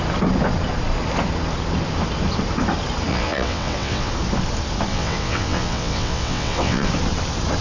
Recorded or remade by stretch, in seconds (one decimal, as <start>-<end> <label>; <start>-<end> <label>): 0.0-3.1 recorded; 3.1-4.1 remade; 4.1-4.9 recorded; 4.9-6.9 remade; 6.9-7.6 recorded